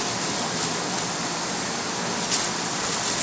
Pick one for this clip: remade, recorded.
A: recorded